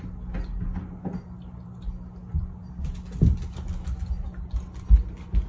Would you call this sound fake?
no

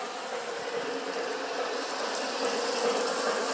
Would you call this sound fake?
no